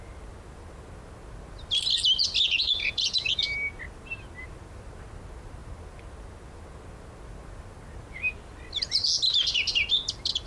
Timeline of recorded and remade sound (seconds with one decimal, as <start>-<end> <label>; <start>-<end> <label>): 0.0-2.6 recorded; 2.6-3.4 remade; 3.4-10.5 recorded